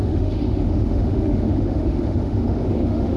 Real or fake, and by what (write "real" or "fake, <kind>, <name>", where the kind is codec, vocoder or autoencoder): fake, autoencoder, DAC-VAE